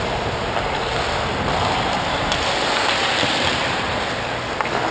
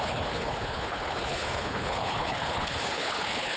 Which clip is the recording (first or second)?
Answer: first